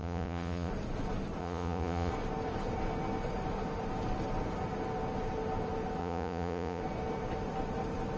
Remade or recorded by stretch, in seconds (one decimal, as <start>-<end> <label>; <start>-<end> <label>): 0.0-0.7 remade; 0.7-1.4 recorded; 1.4-2.1 remade; 2.1-6.0 recorded; 6.0-6.8 remade; 6.8-8.2 recorded